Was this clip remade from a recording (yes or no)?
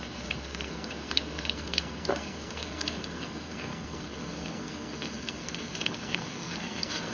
yes